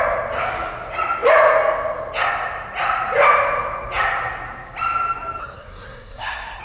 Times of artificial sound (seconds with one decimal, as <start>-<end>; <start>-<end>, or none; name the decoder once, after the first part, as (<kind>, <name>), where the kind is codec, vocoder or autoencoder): 5.4-6.6 (codec, SNAC)